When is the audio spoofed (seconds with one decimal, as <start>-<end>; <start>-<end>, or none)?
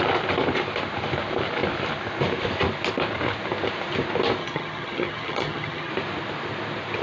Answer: 4.4-5.9